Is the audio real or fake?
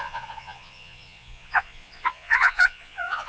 fake